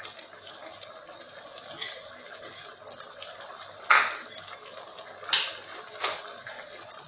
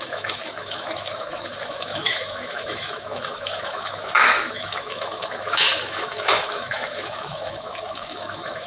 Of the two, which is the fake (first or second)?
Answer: second